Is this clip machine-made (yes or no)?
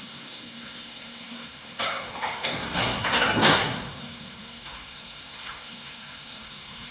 yes